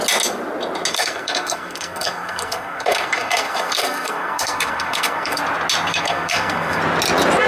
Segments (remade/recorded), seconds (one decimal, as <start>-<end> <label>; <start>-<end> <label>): 0.0-0.9 recorded; 0.9-5.4 remade; 5.4-5.9 recorded; 5.9-6.8 remade; 6.8-7.5 recorded